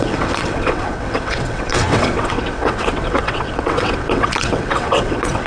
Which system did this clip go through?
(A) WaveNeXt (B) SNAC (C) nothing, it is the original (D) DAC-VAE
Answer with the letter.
A